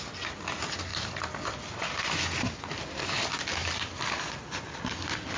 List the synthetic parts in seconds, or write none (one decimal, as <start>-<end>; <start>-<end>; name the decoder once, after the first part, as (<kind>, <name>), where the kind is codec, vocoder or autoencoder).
0.9-1.9 (vocoder, BigVGAN v2); 3.6-4.7